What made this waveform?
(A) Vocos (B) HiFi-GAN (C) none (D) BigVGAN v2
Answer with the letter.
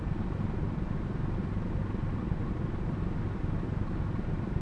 C